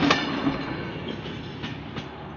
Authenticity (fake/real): real